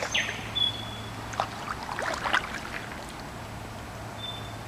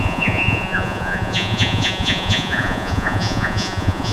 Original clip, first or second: first